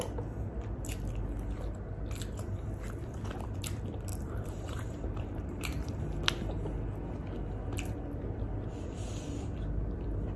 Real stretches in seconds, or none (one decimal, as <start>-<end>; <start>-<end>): 0.0-4.1; 6.0-10.4